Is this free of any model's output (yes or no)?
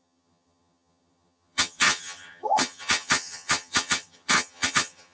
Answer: no